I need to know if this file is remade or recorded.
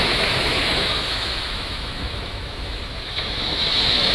remade